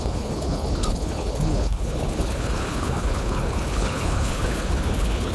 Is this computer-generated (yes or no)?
yes